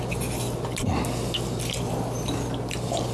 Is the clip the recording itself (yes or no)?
yes